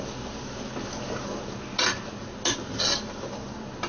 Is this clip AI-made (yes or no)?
no